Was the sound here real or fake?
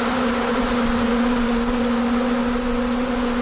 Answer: real